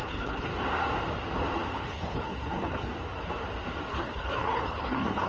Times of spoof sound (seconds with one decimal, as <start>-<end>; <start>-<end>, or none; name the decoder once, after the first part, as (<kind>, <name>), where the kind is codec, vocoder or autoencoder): 0.0-0.5 (codec, HILCodec); 1.8-2.9; 3.9-5.3